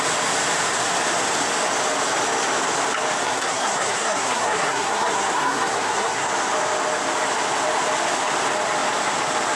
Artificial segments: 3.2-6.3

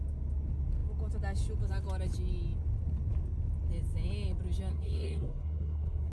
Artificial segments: 4.7-6.1

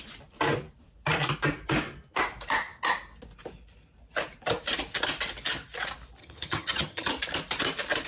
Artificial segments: 6.2-7.1

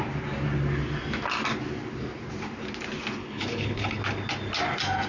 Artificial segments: 3.2-4.0

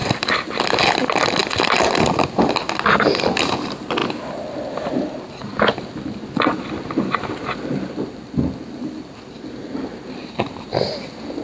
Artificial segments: 0.0-0.8; 4.0-8.4; 10.2-11.0

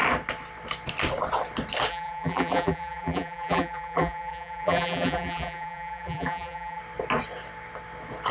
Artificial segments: 1.9-6.8